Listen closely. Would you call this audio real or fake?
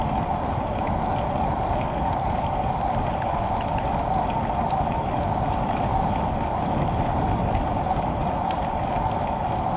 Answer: real